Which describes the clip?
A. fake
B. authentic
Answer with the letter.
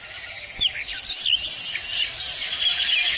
B